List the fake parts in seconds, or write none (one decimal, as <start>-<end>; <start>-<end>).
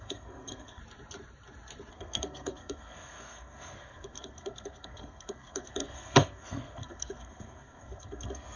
0.0-0.8; 1.9-8.6